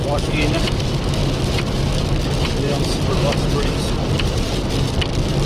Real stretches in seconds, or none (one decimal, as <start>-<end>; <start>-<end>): 0.0-5.5